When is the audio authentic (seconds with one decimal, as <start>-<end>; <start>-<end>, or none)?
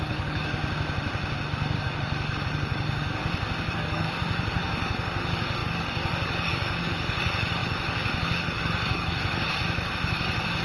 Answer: 0.6-1.8; 3.2-3.7